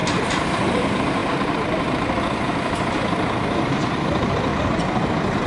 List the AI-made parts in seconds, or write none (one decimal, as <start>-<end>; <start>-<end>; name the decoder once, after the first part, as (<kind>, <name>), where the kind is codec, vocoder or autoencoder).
0.0-4.5 (vocoder, BigVGAN v2)